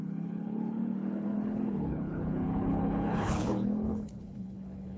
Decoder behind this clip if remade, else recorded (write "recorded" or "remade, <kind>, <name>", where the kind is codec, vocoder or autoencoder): remade, codec, HILCodec